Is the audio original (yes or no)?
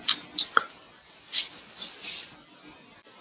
yes